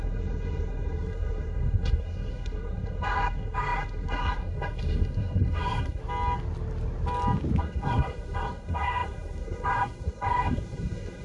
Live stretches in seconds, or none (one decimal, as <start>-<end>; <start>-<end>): 6.0-7.6

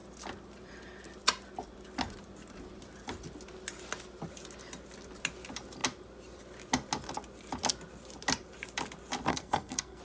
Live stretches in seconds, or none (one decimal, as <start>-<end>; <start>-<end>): 0.0-9.3

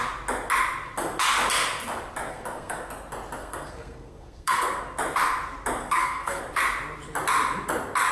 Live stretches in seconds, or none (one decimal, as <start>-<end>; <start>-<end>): 0.0-2.3; 2.9-3.4; 4.8-5.8; 6.4-8.1

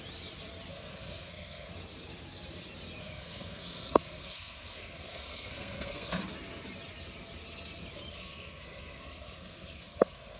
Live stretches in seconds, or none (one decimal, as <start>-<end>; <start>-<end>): 0.0-0.7; 1.7-3.0; 6.2-8.1

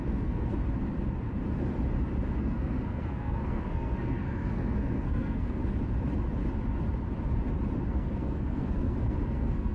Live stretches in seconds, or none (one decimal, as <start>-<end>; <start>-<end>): 0.6-2.4; 5.6-7.9

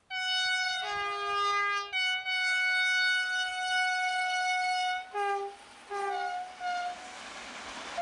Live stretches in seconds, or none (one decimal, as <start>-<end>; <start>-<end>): 0.0-8.0